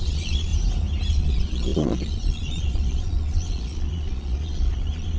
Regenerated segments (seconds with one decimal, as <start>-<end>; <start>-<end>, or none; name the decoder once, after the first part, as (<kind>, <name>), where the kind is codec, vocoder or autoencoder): 0.0-0.5 (vocoder, Vocos); 1.1-5.2